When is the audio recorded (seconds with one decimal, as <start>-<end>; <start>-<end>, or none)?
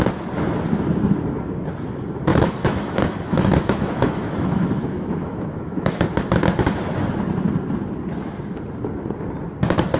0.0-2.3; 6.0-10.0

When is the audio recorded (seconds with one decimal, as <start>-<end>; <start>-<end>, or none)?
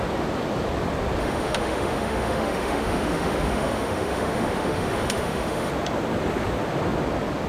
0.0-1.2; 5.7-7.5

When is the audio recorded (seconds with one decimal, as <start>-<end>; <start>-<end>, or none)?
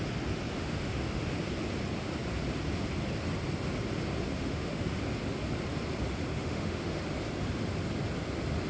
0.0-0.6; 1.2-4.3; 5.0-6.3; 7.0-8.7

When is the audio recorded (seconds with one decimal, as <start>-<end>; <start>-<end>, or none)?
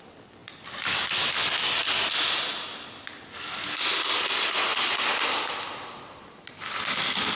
0.0-7.4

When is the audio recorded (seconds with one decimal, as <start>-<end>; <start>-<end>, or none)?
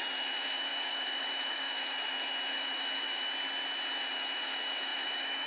3.3-4.1